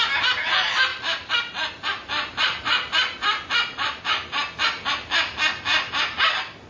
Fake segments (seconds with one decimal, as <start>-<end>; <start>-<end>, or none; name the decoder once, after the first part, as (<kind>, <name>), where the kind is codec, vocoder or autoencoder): none